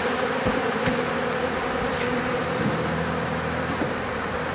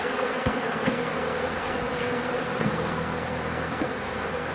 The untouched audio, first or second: first